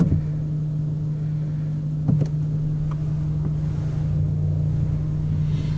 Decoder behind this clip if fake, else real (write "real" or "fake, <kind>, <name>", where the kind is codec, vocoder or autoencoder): real